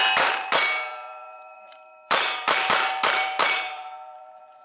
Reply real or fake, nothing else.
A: fake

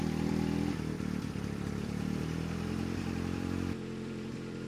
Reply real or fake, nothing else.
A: fake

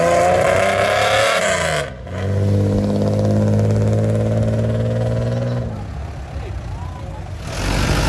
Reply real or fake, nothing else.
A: real